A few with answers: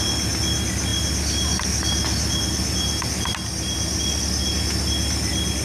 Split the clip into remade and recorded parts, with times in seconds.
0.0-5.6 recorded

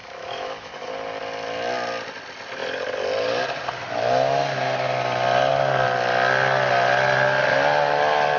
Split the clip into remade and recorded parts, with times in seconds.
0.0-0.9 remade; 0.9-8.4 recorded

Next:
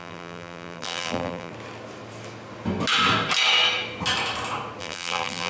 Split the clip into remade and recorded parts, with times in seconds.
0.0-1.5 remade; 1.5-4.8 recorded; 4.8-5.5 remade

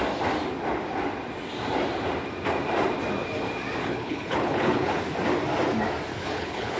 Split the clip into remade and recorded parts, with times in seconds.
0.0-3.8 recorded; 3.8-5.0 remade; 5.0-6.1 recorded; 6.1-6.8 remade

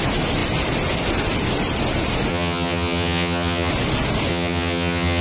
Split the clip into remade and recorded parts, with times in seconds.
0.0-2.3 recorded; 2.3-3.7 remade; 3.7-4.3 recorded; 4.3-5.2 remade